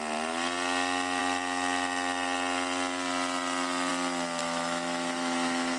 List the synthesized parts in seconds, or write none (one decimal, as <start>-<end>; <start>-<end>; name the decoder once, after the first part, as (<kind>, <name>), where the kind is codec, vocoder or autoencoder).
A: 4.4-5.8 (autoencoder, DAC-VAE)

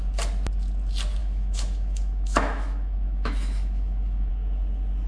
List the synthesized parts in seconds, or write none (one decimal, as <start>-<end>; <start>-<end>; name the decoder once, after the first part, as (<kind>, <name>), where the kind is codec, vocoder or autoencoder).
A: 1.2-4.3 (autoencoder, DAC-VAE)

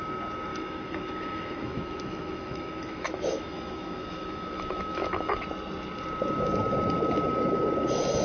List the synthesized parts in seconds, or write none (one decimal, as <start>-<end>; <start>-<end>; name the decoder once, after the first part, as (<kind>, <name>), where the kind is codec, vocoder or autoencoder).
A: 0.5-5.4 (autoencoder, DAC-VAE)